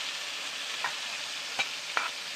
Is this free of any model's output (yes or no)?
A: yes